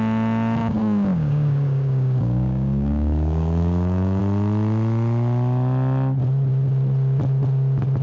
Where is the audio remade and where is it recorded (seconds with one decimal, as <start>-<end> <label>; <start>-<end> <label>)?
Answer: 0.0-0.6 recorded; 0.6-4.2 remade; 4.2-8.0 recorded